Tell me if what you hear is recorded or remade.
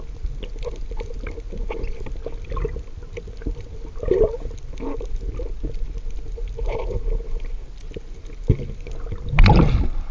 recorded